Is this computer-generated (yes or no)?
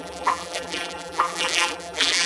yes